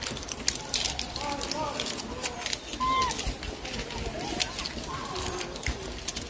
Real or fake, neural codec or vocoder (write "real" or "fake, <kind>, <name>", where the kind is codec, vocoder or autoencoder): real